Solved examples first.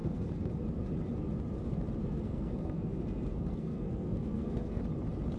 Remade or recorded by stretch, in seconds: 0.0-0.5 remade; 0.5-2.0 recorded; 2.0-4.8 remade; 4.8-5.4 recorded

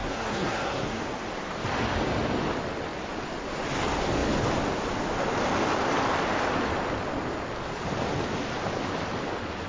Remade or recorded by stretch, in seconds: 0.0-1.0 remade; 1.0-9.7 recorded

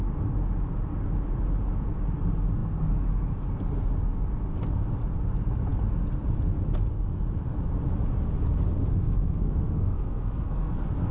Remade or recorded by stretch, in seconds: 0.0-8.9 recorded; 8.9-11.1 remade

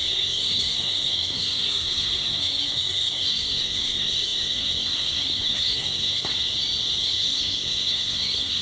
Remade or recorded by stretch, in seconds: 0.0-6.3 remade; 6.3-7.0 recorded; 7.0-8.6 remade

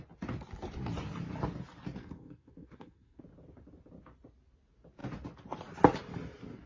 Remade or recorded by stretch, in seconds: 0.0-2.0 recorded; 2.0-3.2 remade; 3.2-6.7 recorded

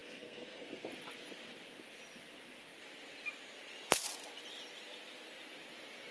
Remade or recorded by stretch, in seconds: 0.0-0.9 remade; 0.9-6.1 recorded

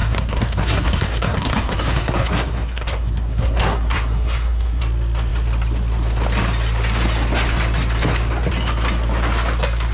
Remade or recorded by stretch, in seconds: 0.0-4.8 remade; 4.8-9.9 recorded

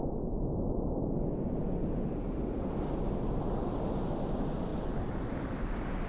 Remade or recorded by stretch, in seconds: 0.0-6.1 recorded